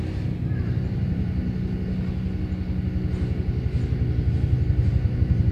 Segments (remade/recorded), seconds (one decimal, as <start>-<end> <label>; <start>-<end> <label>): 0.0-1.4 remade; 1.4-4.3 recorded; 4.3-5.5 remade

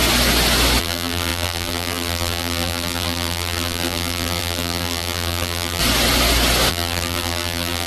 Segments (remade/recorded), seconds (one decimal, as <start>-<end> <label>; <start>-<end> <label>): 0.0-0.8 recorded; 0.8-5.8 remade; 5.8-6.7 recorded; 6.7-7.9 remade

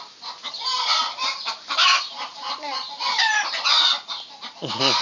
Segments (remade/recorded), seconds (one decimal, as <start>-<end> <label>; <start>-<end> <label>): 0.0-0.7 recorded; 0.7-3.7 remade; 3.7-5.0 recorded